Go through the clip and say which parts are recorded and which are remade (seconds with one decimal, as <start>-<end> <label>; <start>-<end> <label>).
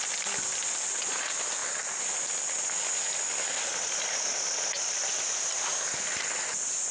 0.0-6.9 recorded